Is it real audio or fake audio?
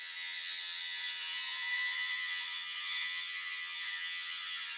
fake